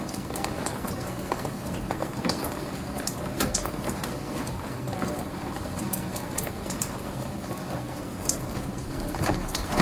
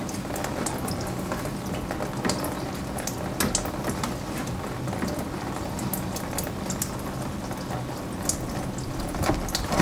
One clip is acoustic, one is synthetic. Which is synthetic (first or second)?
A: first